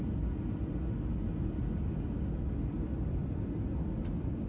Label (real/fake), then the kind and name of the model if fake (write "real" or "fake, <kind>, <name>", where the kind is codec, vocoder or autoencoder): real